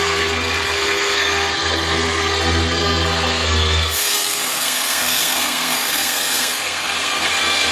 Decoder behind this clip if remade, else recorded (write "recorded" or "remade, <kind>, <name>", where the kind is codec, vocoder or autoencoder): remade, codec, SNAC